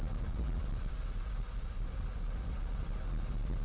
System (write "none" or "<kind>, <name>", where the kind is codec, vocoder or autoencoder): none